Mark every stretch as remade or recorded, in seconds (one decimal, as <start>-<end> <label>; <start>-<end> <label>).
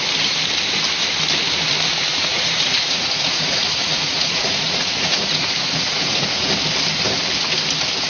0.0-2.1 recorded; 2.1-6.5 remade; 6.5-8.1 recorded